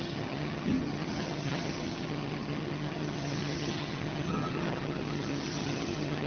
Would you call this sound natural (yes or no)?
no